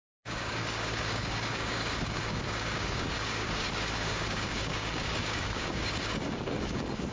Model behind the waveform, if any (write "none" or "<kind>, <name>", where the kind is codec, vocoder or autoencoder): codec, DAC